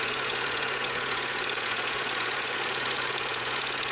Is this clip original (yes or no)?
no